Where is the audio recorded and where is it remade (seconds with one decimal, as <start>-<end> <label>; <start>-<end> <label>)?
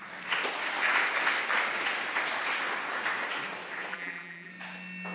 0.0-3.9 recorded; 3.9-4.5 remade; 4.5-5.1 recorded